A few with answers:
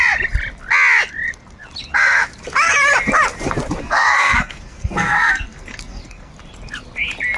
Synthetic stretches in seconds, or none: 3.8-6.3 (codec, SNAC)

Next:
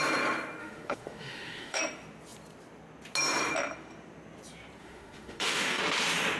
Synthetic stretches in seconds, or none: 0.6-1.8 (autoencoder, DAC-VAE); 4.8-5.8